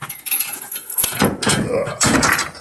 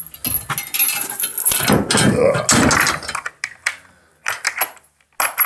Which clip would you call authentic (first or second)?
second